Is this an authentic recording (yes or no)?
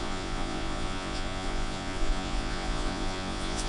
no